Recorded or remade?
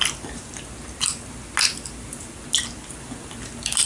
recorded